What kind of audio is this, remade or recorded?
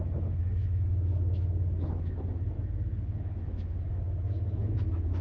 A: remade